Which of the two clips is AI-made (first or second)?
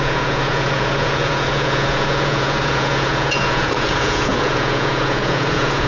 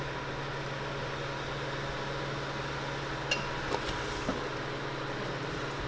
first